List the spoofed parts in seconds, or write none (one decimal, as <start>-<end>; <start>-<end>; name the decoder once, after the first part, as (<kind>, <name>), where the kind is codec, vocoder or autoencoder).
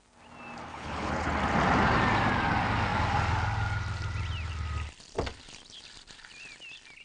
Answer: 0.7-1.3 (codec, HILCodec)